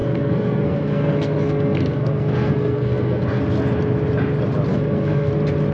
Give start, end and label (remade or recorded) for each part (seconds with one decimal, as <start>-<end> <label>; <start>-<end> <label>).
0.0-3.4 remade; 3.4-4.7 recorded; 4.7-5.3 remade; 5.3-5.7 recorded